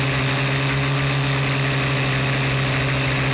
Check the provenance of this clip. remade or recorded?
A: recorded